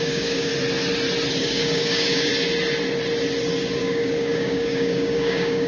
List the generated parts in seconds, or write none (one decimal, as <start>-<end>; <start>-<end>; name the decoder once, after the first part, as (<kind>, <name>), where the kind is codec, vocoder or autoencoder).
0.0-0.5 (codec, DAC); 1.4-2.3; 3.8-5.7